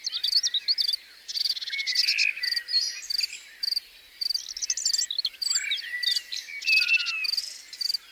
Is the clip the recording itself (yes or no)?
yes